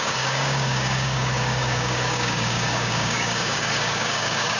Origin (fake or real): fake